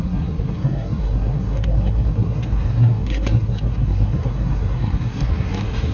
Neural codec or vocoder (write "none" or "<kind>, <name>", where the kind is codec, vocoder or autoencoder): codec, SNAC